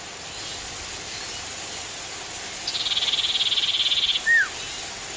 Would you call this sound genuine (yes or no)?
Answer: yes